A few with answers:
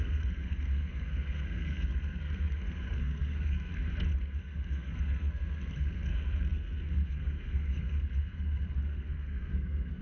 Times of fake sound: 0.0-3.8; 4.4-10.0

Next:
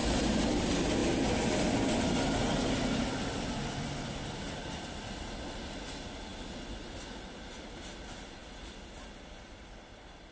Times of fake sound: 0.0-0.6

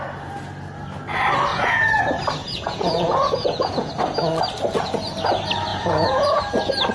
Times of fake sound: 1.5-2.0; 2.4-3.9; 5.7-6.4

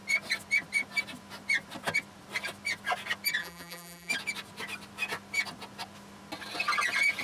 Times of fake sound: 3.4-4.1

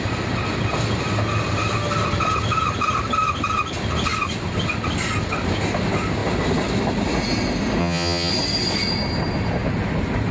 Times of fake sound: 7.8-8.3